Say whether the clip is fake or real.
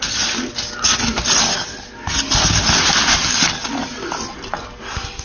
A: real